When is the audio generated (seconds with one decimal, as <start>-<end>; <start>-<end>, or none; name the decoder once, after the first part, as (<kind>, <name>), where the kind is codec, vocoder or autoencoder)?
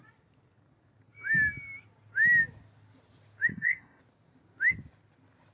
3.5-4.0 (codec, ZipCodec)